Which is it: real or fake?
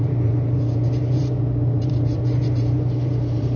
fake